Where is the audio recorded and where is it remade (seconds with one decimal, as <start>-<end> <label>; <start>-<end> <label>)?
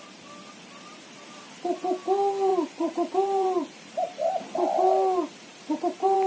0.0-2.5 recorded; 2.5-4.7 remade; 4.7-5.5 recorded; 5.5-6.3 remade